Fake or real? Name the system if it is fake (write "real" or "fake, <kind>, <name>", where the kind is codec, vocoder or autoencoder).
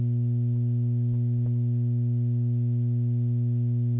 real